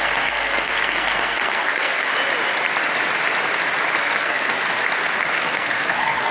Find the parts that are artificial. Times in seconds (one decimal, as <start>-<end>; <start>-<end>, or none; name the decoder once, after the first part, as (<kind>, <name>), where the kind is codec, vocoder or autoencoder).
0.0-2.1 (codec, SNAC); 4.0-4.6; 5.4-6.3